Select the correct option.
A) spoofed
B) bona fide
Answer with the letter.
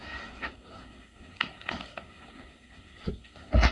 A